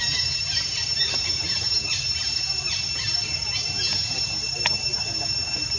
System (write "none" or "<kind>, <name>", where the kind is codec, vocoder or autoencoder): none